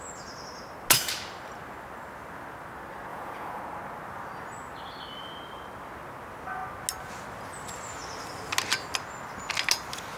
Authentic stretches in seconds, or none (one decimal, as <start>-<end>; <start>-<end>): 0.0-3.1; 3.6-10.2